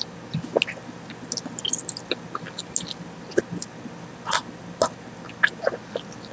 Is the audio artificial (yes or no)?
no